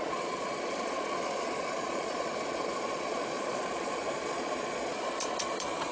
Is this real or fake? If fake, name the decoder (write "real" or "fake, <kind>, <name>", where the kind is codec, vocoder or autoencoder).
fake, vocoder, Vocos